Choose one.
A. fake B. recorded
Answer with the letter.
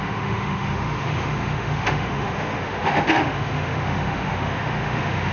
A